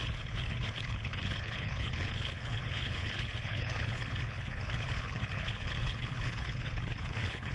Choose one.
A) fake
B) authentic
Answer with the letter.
A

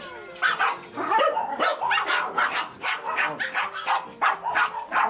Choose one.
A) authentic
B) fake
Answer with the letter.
A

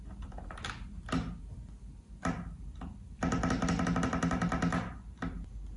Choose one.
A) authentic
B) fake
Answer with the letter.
A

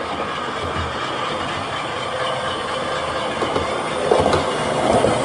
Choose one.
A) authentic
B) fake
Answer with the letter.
A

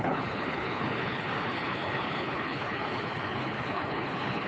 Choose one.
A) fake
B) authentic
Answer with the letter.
A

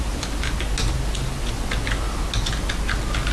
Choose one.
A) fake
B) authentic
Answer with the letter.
B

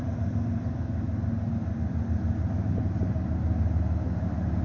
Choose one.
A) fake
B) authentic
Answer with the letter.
B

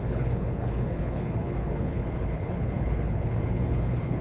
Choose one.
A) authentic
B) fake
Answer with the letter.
B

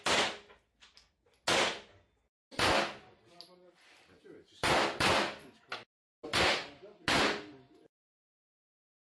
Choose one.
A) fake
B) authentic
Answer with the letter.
B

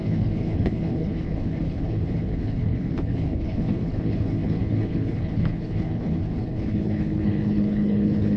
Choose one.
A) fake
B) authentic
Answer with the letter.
A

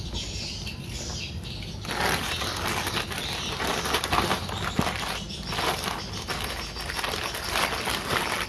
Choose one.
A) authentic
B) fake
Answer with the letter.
A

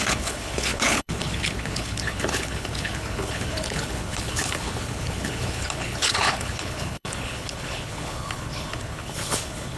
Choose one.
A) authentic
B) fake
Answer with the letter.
B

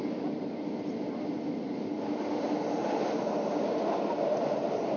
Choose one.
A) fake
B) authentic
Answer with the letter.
B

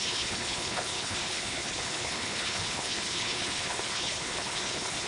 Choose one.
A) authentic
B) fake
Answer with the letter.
B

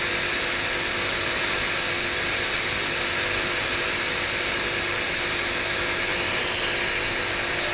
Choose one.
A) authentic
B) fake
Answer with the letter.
A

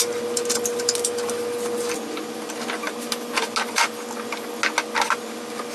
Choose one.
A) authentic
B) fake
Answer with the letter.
A